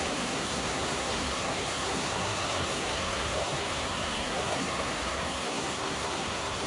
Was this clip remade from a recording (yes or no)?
yes